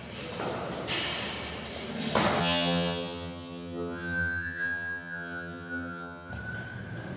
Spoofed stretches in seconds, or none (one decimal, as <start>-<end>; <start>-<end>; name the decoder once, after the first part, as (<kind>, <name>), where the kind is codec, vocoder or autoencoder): 2.4-6.3 (vocoder, HiFi-GAN)